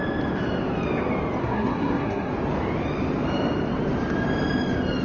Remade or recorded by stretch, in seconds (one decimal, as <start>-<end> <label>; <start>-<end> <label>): 0.0-1.4 recorded; 1.4-2.3 remade; 2.3-5.0 recorded